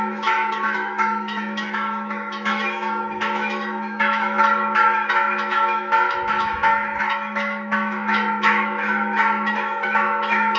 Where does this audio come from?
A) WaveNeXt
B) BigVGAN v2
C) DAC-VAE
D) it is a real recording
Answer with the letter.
C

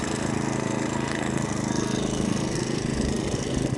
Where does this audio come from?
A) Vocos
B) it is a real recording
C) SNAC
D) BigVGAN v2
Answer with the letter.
C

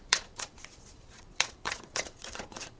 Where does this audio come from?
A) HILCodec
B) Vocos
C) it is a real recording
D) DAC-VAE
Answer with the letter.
B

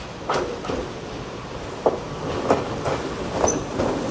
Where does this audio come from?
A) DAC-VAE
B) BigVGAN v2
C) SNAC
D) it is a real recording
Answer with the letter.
D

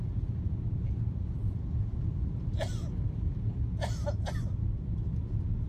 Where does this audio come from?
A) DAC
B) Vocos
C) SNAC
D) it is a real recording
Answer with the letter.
D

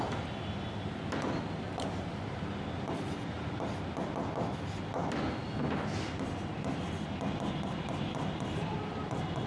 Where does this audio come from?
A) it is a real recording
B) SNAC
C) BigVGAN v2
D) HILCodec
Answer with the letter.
A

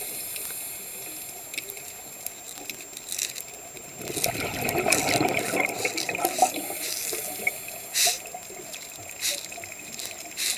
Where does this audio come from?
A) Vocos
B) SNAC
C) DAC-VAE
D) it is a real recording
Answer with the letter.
D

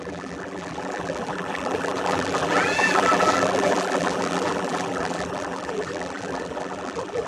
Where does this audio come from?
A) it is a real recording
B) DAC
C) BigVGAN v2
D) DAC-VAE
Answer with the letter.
C